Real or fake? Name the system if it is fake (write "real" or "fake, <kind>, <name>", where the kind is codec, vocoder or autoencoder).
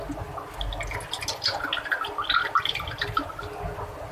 real